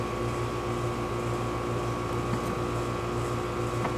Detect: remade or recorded recorded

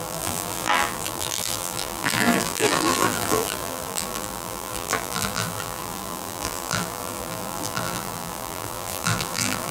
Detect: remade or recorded remade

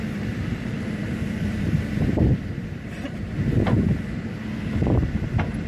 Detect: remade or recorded remade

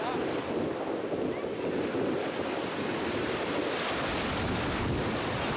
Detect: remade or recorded recorded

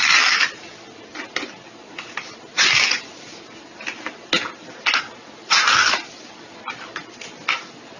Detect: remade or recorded recorded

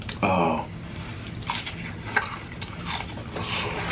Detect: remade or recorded remade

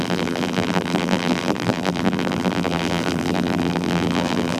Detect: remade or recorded remade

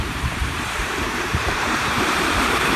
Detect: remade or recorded remade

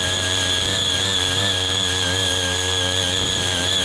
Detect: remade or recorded remade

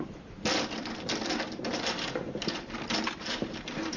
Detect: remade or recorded remade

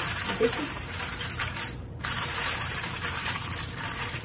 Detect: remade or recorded remade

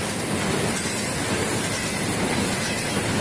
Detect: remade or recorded recorded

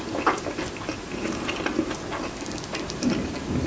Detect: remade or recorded recorded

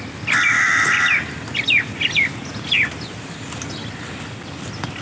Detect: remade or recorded recorded